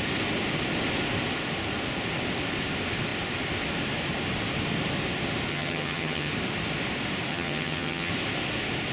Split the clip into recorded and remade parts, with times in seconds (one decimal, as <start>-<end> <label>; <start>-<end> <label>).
0.0-5.5 recorded; 5.5-6.3 remade; 6.3-7.3 recorded; 7.3-8.1 remade; 8.1-8.9 recorded